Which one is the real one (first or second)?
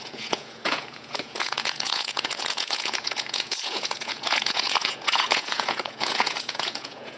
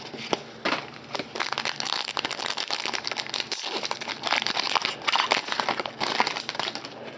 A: second